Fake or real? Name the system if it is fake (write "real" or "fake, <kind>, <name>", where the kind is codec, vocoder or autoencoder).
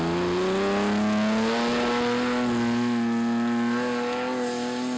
real